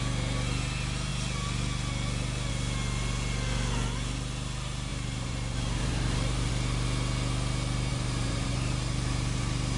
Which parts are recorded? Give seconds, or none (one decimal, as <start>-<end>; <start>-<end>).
0.0-4.9; 6.5-7.9